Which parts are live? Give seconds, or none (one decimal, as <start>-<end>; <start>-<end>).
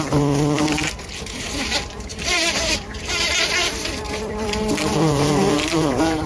none